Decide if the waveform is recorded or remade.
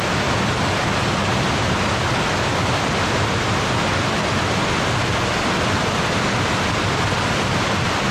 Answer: recorded